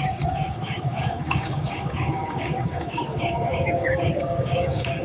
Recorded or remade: remade